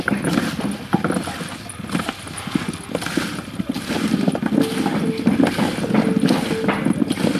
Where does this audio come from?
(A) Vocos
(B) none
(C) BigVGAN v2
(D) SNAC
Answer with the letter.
B